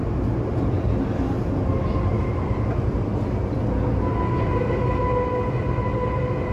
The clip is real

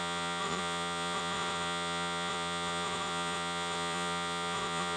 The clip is fake